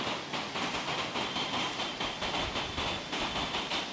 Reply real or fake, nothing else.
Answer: real